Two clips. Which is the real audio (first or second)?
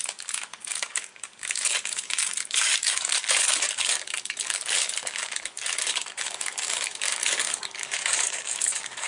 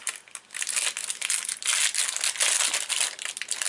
second